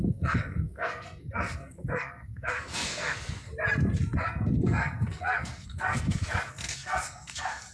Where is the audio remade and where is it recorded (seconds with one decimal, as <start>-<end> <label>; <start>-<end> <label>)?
0.0-3.5 remade; 3.5-4.2 recorded; 4.2-7.7 remade